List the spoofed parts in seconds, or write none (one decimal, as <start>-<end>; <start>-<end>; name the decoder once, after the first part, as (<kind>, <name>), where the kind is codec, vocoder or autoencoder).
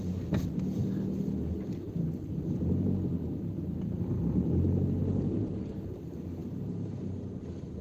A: 0.0-1.9 (vocoder, BigVGAN v2)